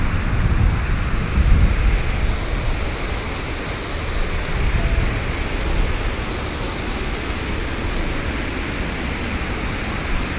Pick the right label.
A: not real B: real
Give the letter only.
B